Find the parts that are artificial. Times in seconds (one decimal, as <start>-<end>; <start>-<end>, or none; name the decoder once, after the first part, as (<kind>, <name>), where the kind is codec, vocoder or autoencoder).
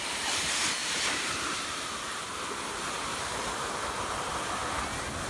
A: 0.8-2.5 (vocoder, BigVGAN v2); 3.1-3.7